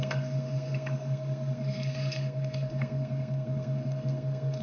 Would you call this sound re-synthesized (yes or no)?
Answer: yes